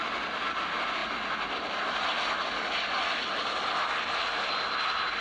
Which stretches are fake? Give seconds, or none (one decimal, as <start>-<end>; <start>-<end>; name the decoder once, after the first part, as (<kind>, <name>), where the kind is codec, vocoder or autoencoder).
none